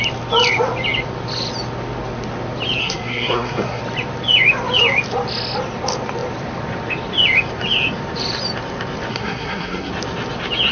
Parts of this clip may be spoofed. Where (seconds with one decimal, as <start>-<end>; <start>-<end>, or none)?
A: 2.8-3.8; 9.1-9.9

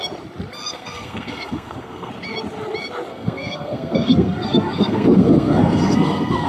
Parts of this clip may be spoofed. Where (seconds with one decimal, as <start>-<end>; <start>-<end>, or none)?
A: 0.7-2.1; 3.1-6.5